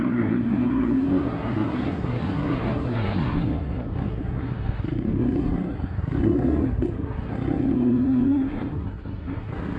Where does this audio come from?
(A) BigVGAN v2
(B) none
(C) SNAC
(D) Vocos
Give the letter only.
C